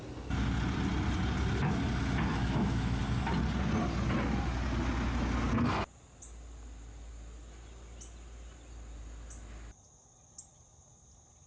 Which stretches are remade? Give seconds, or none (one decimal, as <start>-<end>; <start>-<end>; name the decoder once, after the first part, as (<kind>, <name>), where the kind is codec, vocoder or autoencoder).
2.3-3.0 (autoencoder, DAC-VAE)